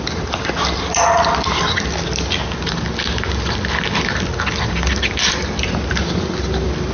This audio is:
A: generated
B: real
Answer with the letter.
B